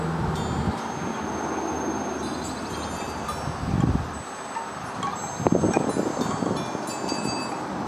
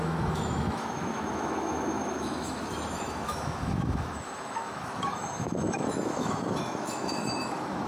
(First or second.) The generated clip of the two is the second